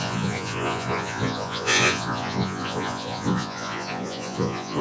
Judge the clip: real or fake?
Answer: fake